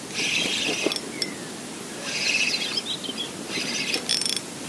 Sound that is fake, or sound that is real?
real